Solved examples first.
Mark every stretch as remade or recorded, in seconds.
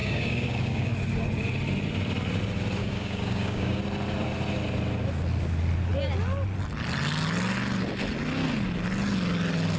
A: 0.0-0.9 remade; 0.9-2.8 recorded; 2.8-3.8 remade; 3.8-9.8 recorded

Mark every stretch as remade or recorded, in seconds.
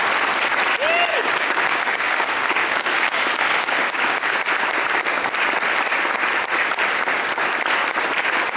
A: 0.0-1.1 recorded; 1.1-4.4 remade; 4.4-8.6 recorded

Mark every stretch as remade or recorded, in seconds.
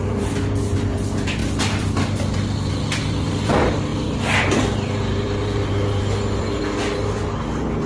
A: 0.0-7.9 recorded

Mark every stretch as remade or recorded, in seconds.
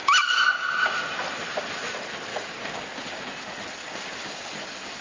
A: 0.0-2.3 recorded; 2.3-3.2 remade; 3.2-3.8 recorded; 3.8-4.5 remade; 4.5-5.0 recorded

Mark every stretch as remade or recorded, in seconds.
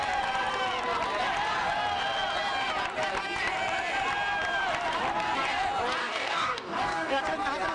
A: 0.0-6.0 recorded; 6.0-7.2 remade; 7.2-7.7 recorded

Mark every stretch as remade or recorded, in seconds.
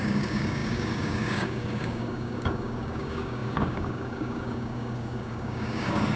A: 0.0-6.2 remade